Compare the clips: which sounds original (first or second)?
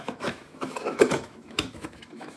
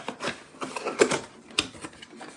second